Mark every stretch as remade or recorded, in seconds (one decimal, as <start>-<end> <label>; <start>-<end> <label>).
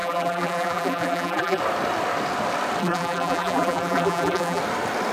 0.0-1.6 remade; 1.6-2.8 recorded; 2.8-4.6 remade; 4.6-5.1 recorded